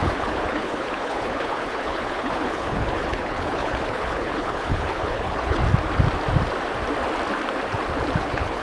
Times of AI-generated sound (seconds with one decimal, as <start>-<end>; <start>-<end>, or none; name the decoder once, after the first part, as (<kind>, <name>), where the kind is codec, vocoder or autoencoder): 0.0-5.6 (codec, HILCodec); 8.2-8.6